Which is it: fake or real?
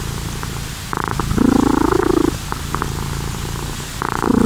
real